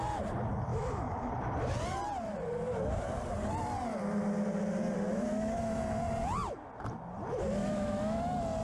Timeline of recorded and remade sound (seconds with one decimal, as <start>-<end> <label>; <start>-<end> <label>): 0.0-0.7 recorded; 0.7-1.3 remade; 1.3-5.1 recorded; 5.1-5.8 remade; 5.8-7.6 recorded; 7.6-8.2 remade; 8.2-8.6 recorded